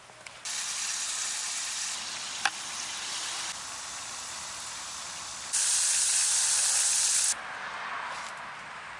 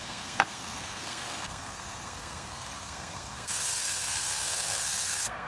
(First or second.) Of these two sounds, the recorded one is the first